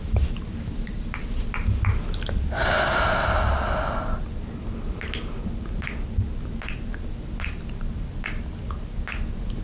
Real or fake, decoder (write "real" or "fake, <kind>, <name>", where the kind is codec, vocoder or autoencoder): real